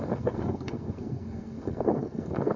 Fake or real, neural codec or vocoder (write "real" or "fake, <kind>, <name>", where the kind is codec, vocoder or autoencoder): fake, codec, SNAC